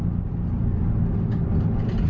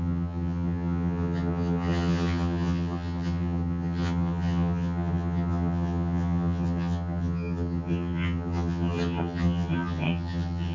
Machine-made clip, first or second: second